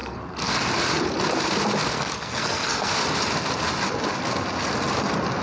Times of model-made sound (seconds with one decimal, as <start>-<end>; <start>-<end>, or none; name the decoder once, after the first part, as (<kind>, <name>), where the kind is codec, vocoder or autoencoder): 0.0-0.6 (codec, SNAC); 1.9-2.9